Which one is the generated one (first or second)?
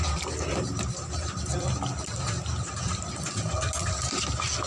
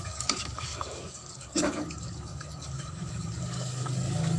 second